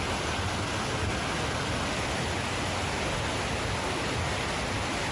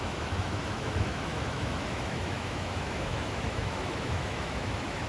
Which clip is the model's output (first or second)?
second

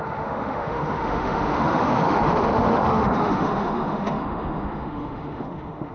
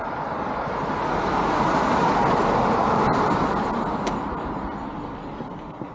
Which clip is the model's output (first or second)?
first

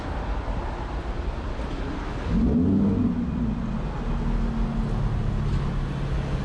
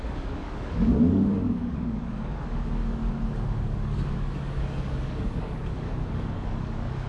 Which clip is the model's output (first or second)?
second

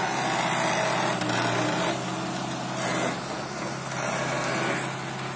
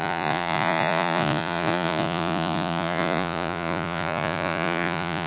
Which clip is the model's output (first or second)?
second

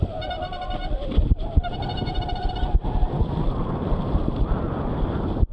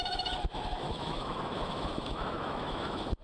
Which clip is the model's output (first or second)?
second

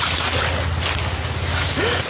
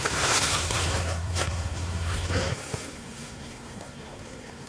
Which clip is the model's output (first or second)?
second